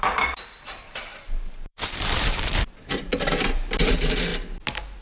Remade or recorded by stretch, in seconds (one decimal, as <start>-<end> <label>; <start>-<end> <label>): 0.0-3.1 remade; 3.1-3.8 recorded; 3.8-4.3 remade; 4.3-5.0 recorded